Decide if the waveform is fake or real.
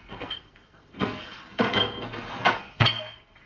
fake